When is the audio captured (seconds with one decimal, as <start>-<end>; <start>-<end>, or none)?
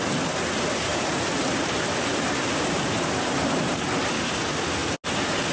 0.0-0.9; 3.9-5.5